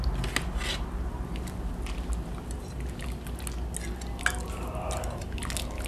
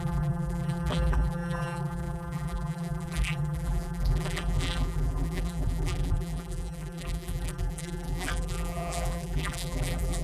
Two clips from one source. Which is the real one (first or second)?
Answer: first